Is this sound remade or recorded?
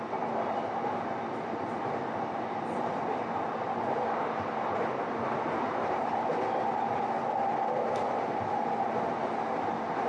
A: recorded